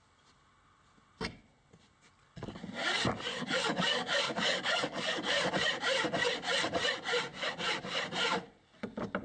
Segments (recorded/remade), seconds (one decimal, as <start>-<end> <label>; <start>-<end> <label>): 0.0-3.3 recorded; 3.3-5.5 remade; 5.5-9.2 recorded